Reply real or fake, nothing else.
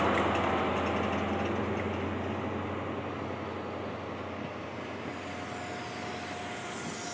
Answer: real